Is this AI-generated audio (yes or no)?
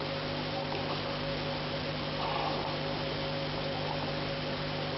no